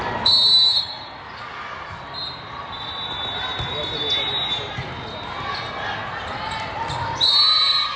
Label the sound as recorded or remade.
remade